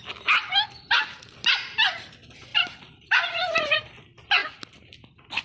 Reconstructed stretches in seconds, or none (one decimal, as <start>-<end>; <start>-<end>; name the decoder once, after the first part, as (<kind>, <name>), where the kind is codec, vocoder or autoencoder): 2.5-3.9 (vocoder, BigVGAN v2)